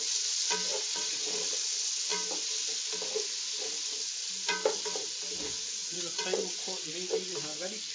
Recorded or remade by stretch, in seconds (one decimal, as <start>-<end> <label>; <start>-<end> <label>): 0.0-0.7 recorded; 0.7-1.4 remade; 1.4-5.8 recorded; 5.8-6.9 remade; 6.9-7.9 recorded